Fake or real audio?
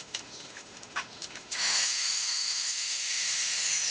fake